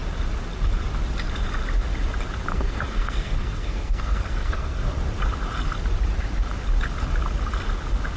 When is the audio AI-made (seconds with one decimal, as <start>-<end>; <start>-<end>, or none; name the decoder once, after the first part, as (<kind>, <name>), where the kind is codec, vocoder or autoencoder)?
2.5-4.8 (codec, SNAC)